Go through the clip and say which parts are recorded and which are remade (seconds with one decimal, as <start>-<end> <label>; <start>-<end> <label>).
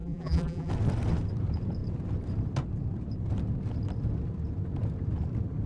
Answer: 0.0-0.7 remade; 0.7-5.7 recorded